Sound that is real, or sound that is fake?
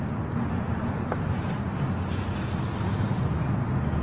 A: real